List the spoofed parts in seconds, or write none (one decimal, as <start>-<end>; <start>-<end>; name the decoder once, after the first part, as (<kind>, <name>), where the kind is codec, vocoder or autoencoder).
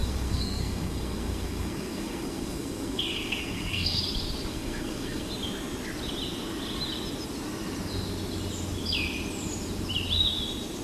0.0-4.0 (codec, SNAC); 4.5-5.3